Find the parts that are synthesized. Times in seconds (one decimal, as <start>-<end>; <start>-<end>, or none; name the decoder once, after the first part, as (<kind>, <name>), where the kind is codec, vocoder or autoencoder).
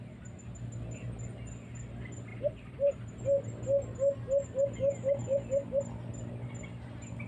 2.3-2.9 (vocoder, BigVGAN v2)